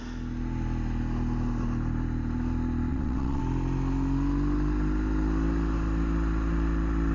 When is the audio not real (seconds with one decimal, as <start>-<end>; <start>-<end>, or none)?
2.9-3.4